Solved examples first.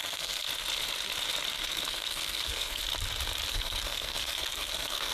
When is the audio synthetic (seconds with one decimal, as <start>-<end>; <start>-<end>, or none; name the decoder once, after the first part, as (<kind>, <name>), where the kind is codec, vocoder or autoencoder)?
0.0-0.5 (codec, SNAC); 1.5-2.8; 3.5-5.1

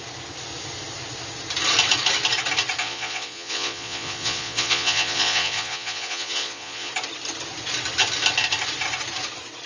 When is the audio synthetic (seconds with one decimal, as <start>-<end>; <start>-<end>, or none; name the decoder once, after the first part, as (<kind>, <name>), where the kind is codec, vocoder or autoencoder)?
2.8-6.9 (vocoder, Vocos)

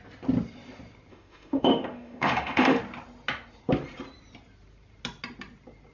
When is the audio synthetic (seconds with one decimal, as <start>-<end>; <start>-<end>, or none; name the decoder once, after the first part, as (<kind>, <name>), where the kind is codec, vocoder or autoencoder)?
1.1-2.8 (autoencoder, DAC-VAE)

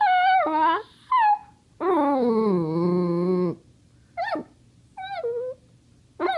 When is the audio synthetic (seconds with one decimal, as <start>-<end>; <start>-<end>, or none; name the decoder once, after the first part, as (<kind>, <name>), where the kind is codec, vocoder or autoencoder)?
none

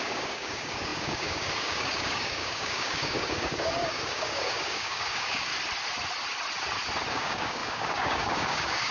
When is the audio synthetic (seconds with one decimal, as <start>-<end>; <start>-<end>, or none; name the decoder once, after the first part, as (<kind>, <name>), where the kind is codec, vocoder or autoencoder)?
0.0-5.5 (codec, DAC); 7.1-8.9

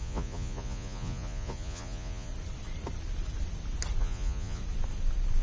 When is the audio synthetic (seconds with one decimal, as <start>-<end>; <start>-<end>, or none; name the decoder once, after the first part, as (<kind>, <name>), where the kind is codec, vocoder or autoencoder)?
0.0-2.3 (vocoder, Vocos); 4.0-4.6

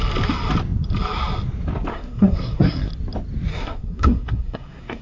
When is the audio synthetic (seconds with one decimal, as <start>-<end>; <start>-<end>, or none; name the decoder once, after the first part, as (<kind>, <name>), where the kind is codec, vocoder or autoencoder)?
1.9-2.9 (codec, SNAC); 3.5-5.0

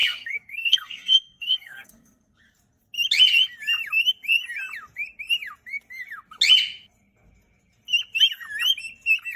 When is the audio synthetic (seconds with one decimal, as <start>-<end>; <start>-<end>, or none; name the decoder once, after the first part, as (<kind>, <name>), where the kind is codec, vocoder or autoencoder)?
0.0-2.4 (codec, SNAC)